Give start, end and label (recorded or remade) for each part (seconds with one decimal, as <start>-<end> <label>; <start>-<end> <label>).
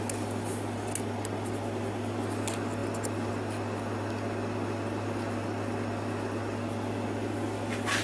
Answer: 0.0-8.0 recorded